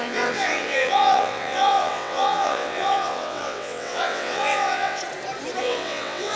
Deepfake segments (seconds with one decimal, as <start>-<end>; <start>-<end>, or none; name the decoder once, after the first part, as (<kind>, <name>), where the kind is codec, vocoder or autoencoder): 0.0-5.0 (vocoder, WaveNeXt); 5.6-6.4